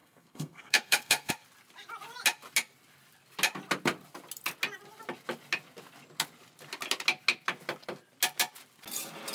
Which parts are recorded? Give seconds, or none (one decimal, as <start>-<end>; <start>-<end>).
1.3-9.3